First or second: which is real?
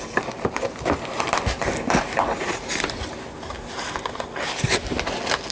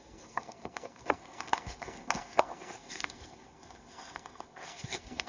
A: first